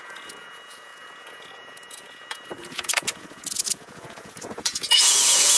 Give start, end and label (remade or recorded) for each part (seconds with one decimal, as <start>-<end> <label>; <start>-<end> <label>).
0.0-5.6 remade